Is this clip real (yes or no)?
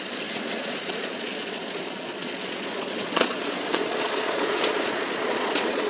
no